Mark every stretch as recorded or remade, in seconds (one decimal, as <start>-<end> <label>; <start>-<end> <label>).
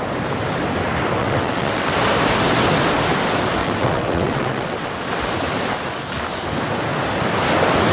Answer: 0.0-1.2 recorded; 1.2-1.9 remade; 1.9-3.6 recorded; 3.6-4.9 remade; 4.9-7.9 recorded